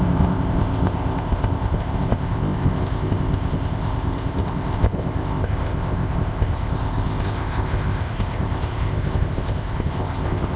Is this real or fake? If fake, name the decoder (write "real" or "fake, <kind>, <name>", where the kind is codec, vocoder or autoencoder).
fake, codec, ZipCodec